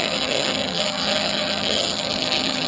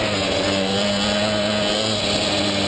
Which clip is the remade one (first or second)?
first